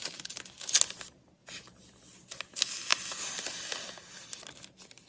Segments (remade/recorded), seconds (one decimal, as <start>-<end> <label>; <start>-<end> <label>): 0.0-5.1 recorded

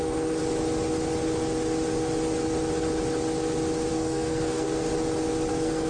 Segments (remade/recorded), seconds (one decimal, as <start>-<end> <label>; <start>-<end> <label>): 0.0-0.4 remade; 0.4-3.9 recorded; 3.9-4.9 remade; 4.9-5.5 recorded; 5.5-5.9 remade

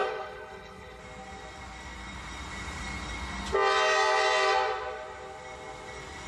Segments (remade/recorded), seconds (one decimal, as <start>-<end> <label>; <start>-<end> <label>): 0.0-1.0 remade; 1.0-6.3 recorded

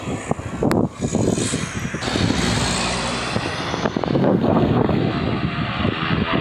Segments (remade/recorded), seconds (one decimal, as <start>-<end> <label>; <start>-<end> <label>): 0.0-4.2 recorded; 4.2-5.0 remade; 5.0-6.4 recorded

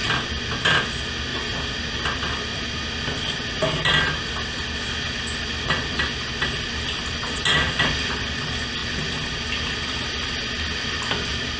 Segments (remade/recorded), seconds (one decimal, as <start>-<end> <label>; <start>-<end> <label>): 0.0-11.6 recorded

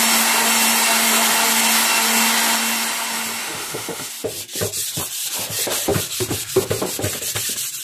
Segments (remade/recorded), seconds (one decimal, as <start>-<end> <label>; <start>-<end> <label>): 0.0-3.4 recorded; 3.4-4.1 remade; 4.1-7.8 recorded

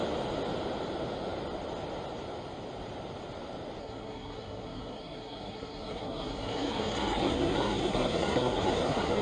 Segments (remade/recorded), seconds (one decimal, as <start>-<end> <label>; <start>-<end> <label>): 0.0-3.8 recorded; 3.8-9.2 remade